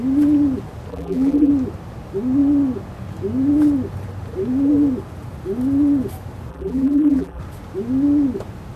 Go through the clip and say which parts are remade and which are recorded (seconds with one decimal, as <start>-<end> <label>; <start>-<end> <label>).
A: 0.0-0.9 recorded; 0.9-1.5 remade; 1.5-6.5 recorded; 6.5-7.4 remade; 7.4-8.8 recorded